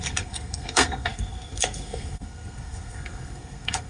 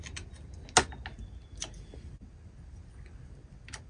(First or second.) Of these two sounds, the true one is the second